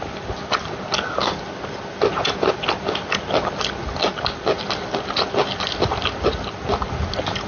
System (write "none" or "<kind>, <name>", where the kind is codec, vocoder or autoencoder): none